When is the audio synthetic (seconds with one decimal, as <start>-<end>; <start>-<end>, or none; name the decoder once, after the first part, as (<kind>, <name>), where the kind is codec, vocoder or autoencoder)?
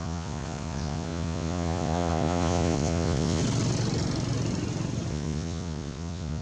0.0-3.4 (vocoder, Vocos); 5.1-6.4